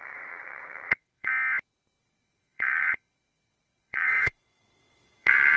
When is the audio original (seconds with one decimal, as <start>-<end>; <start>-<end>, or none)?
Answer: 1.3-2.0